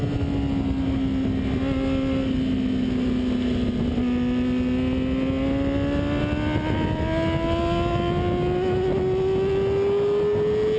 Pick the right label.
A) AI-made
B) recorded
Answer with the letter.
B